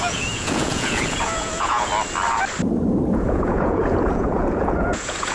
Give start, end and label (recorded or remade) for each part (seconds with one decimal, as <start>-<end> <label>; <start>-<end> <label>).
0.0-1.9 remade; 1.9-3.1 recorded; 3.1-5.3 remade